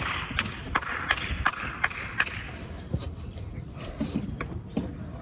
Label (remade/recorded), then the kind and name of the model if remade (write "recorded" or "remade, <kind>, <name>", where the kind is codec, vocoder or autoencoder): remade, vocoder, BigVGAN v2